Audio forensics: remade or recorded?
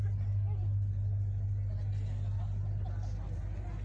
recorded